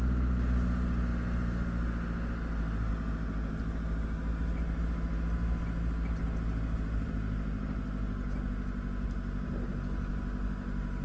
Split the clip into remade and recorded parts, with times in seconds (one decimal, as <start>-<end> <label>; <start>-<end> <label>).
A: 0.0-11.0 recorded